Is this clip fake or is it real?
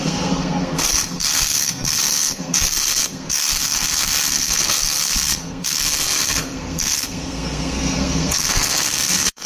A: fake